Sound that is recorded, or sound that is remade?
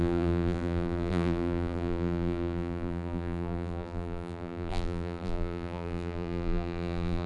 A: remade